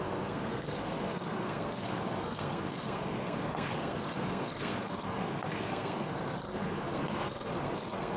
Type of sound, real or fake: fake